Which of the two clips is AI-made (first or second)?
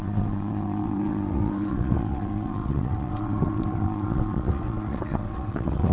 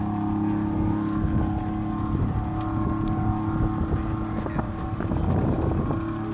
first